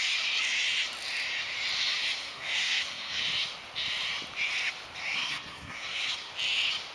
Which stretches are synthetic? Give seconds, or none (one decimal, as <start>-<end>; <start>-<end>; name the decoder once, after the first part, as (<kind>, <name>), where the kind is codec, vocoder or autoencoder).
2.2-3.2 (codec, SNAC); 5.0-6.3